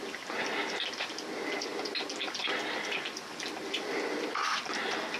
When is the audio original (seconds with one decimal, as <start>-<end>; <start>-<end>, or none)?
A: 0.0-5.2